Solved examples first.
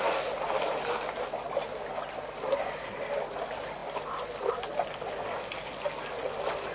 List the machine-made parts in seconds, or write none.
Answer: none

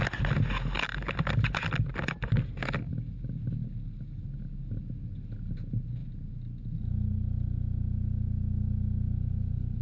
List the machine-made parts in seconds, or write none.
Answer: none

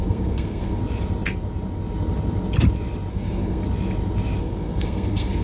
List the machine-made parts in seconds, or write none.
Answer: 0.0-0.8; 3.1-3.6; 4.4-5.4

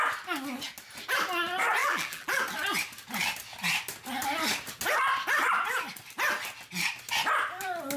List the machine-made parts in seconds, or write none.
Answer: 1.8-2.4